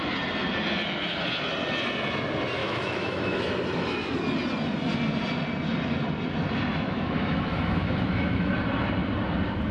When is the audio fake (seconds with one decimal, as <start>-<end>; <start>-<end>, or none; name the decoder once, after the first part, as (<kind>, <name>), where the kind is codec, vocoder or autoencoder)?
2.6-3.5 (autoencoder, DAC-VAE); 6.7-8.5